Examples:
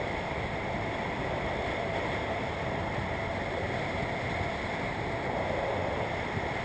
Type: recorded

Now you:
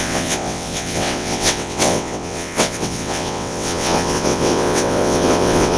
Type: remade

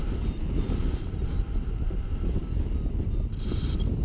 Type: recorded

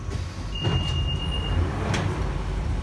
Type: recorded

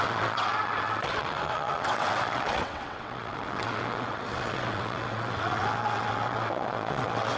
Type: remade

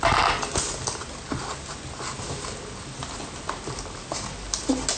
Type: recorded